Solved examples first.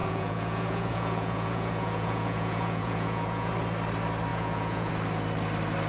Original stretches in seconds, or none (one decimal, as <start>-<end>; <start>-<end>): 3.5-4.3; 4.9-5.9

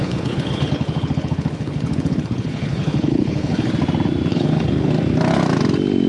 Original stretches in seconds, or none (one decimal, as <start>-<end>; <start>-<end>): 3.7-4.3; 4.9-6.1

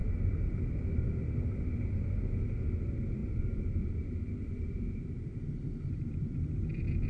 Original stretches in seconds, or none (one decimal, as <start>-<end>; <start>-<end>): 0.0-3.2; 6.4-7.1

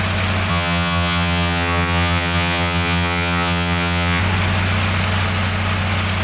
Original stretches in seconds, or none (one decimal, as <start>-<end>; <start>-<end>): 0.0-0.5; 4.2-6.2

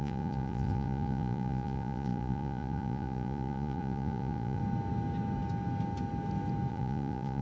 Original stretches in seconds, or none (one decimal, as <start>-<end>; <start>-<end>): 4.6-6.7